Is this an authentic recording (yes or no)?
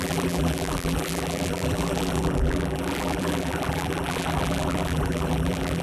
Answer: no